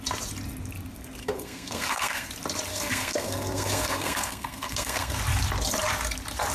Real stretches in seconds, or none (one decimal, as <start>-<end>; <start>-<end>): 0.0-1.2; 2.3-2.7; 5.2-6.5